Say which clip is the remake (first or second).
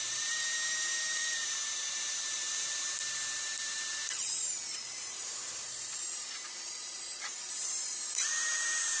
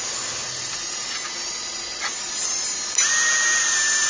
first